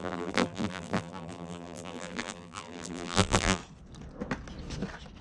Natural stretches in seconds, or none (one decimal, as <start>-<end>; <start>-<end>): 3.6-5.2